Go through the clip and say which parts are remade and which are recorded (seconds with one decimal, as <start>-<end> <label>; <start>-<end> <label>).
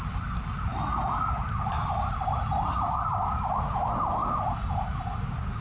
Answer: 0.0-5.6 recorded